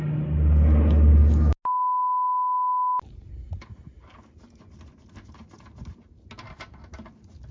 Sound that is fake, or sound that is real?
real